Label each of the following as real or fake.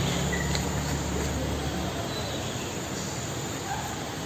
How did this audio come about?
real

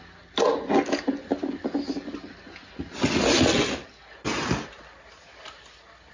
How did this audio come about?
real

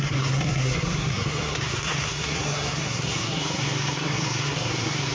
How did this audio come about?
fake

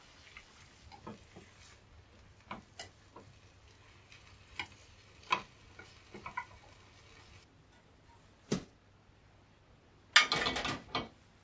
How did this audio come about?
real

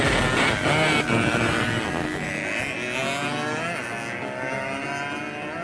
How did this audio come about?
real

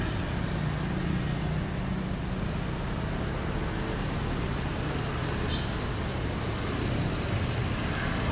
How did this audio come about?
real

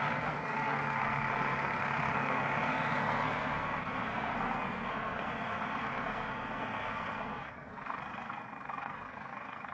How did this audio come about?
fake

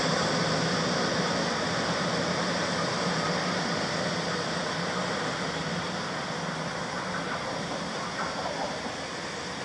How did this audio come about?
real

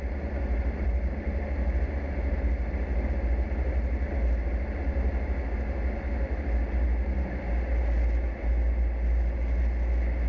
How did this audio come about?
real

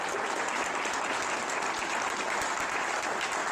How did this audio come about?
real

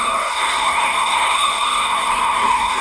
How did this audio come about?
fake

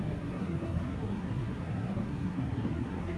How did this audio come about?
fake